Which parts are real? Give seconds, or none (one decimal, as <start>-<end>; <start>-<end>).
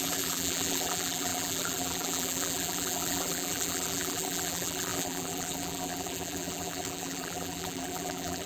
none